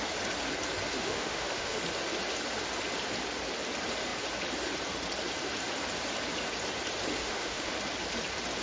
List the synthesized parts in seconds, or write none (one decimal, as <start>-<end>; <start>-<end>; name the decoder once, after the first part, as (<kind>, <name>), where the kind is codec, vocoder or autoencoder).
0.9-1.8 (autoencoder, DAC-VAE); 7.2-7.7